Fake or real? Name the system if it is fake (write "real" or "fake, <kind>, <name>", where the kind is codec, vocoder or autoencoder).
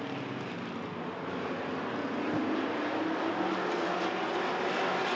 real